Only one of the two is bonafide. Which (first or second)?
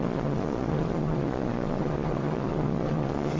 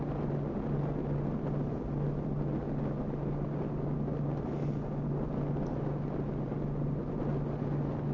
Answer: second